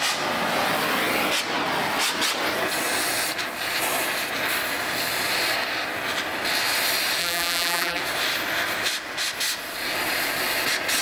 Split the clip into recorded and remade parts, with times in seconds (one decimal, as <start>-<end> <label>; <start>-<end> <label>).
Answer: 0.0-7.2 recorded; 7.2-8.0 remade; 8.0-11.0 recorded